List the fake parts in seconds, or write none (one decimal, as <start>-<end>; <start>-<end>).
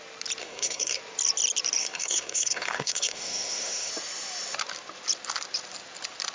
0.4-1.0; 1.8-3.9